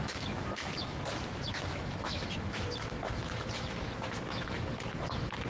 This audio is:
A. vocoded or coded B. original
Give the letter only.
A